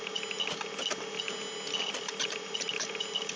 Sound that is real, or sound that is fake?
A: real